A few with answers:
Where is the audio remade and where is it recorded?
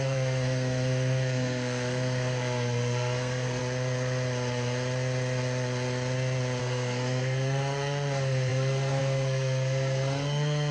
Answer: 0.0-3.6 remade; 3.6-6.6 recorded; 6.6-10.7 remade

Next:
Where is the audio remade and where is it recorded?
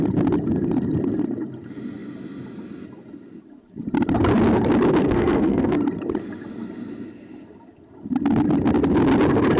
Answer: 0.0-5.0 recorded; 5.0-5.8 remade; 5.8-9.6 recorded